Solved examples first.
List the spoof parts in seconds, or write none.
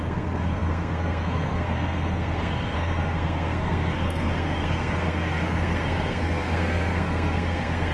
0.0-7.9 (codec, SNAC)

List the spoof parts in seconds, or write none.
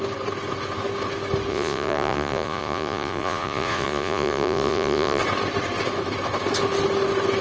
1.5-5.2 (vocoder, Vocos)